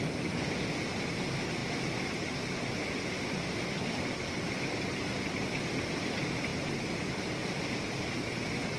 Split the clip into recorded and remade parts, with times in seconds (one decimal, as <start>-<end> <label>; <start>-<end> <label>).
0.0-8.8 recorded